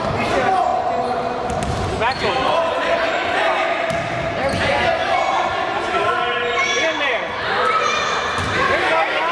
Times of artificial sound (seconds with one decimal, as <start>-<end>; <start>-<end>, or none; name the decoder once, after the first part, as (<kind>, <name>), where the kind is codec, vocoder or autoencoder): 5.0-8.2 (vocoder, BigVGAN v2)